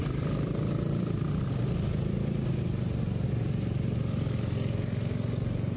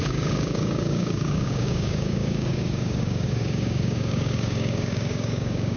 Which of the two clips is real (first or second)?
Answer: first